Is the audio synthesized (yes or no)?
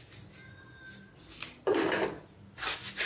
no